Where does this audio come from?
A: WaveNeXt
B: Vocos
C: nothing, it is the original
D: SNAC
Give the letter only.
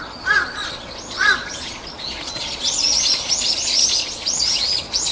B